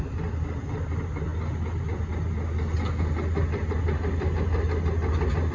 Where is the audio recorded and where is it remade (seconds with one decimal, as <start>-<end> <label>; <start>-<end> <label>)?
0.0-5.5 recorded